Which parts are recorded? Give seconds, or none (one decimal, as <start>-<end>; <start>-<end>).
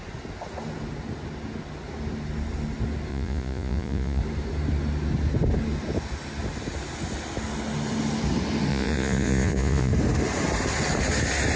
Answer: 0.0-3.1; 4.2-8.7; 9.9-11.6